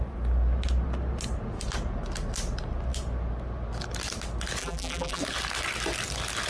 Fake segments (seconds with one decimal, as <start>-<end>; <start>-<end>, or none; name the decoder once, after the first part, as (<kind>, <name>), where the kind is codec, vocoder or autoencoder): 4.6-5.2 (vocoder, BigVGAN v2)